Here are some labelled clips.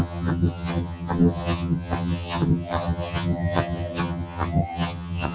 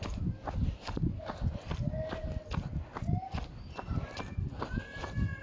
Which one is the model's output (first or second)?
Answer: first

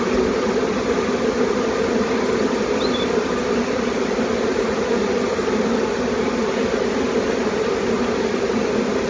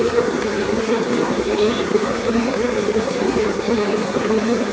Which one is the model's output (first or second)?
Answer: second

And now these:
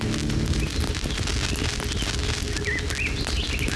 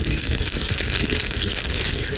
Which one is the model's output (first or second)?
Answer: second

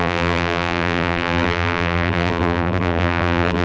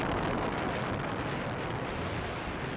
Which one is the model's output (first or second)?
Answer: first